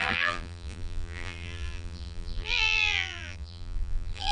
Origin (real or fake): fake